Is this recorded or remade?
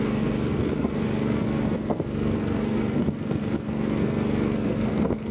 remade